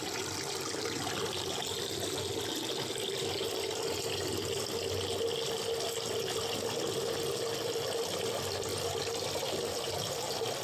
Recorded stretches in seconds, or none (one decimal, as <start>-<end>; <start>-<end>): 0.0-10.6